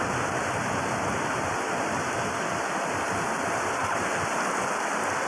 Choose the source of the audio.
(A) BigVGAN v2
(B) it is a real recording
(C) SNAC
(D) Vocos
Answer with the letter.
B